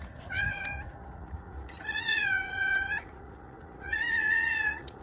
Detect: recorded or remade remade